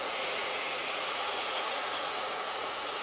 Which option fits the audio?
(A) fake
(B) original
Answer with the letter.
A